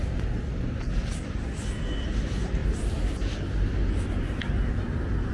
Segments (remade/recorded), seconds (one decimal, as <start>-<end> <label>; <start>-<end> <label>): 0.0-5.3 recorded